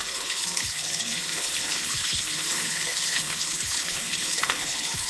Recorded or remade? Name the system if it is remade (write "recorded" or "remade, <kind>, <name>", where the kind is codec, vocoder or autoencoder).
remade, codec, HILCodec